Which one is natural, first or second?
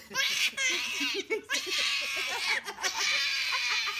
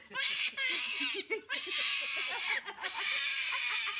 first